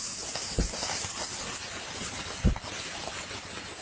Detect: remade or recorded recorded